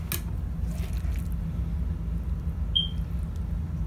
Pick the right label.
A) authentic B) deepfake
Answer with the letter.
A